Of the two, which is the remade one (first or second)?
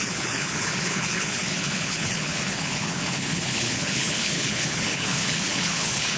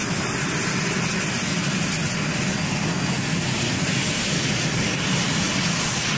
first